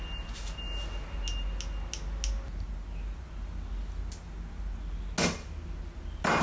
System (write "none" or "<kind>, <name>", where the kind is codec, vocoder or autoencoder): none